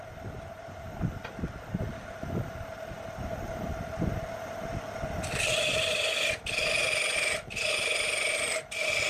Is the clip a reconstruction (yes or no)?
no